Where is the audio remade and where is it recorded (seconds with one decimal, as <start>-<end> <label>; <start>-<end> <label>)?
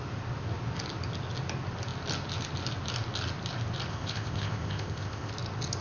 0.0-3.9 recorded; 3.9-5.3 remade; 5.3-5.8 recorded